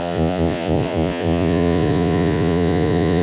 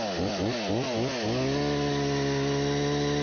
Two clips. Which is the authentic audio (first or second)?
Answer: second